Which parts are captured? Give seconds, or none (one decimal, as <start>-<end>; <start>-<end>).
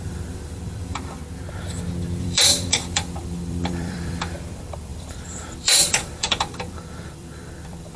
1.2-2.2